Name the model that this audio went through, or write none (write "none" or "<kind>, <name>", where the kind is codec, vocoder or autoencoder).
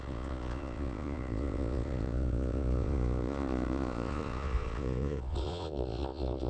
vocoder, Vocos